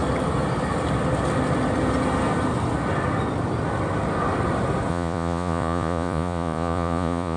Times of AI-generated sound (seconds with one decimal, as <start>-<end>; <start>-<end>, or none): 4.9-7.4